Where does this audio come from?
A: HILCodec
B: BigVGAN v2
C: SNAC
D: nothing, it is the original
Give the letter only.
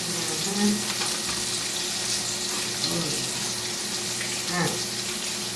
D